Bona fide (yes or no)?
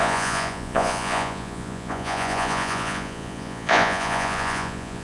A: no